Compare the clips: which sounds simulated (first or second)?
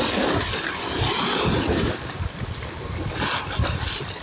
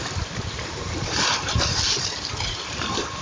second